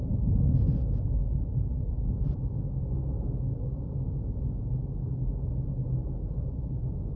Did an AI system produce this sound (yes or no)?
no